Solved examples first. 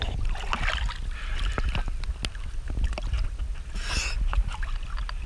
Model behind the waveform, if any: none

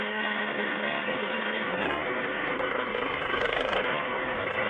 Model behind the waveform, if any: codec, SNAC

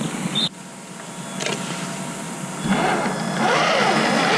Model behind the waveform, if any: none